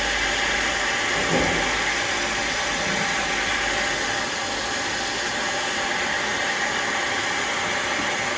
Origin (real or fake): real